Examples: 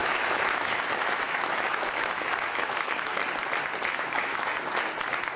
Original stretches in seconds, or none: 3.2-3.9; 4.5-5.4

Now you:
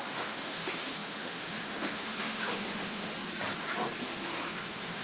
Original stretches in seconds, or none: 3.1-4.0

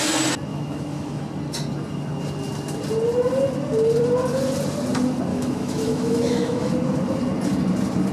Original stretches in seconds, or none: 0.0-0.5; 1.2-5.3; 6.7-8.1